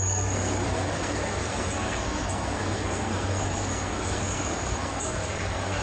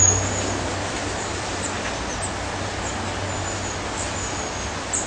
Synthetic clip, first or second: first